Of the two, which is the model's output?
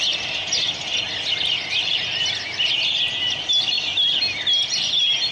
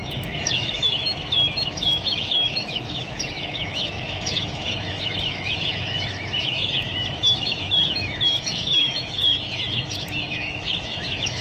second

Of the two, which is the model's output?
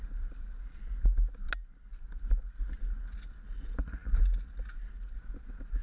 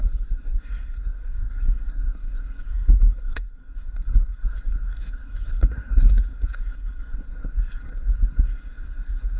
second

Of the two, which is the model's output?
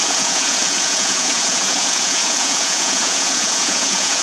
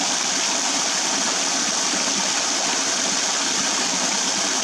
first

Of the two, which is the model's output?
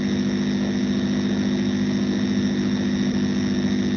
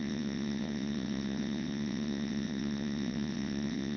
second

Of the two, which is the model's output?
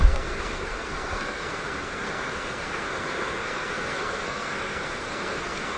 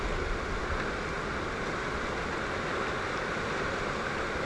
first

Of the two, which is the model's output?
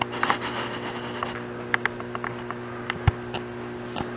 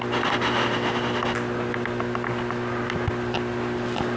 first